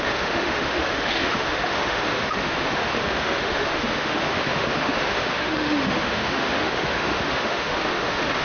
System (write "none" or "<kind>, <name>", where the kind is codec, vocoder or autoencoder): autoencoder, DAC-VAE